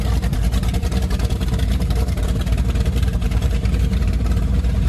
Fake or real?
fake